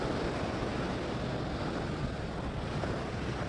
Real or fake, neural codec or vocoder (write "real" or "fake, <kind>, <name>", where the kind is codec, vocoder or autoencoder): real